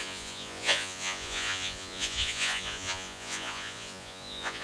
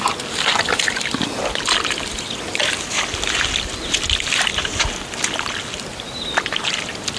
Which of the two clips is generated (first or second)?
first